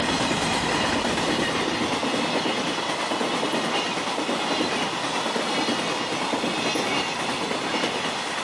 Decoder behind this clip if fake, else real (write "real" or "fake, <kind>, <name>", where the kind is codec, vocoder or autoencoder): real